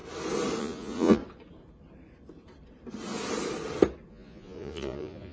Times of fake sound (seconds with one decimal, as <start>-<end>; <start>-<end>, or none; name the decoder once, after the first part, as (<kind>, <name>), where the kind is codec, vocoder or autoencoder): 0.6-1.2 (vocoder, Vocos); 4.1-5.3